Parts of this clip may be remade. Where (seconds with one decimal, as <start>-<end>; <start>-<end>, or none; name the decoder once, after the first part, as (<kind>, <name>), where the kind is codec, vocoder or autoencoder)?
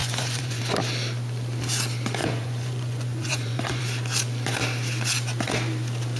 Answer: 0.0-0.6 (vocoder, Vocos); 2.2-3.8